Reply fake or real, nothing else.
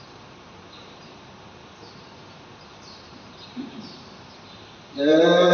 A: fake